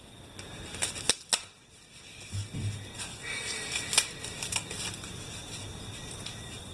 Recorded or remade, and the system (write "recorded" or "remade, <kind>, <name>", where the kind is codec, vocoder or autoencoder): recorded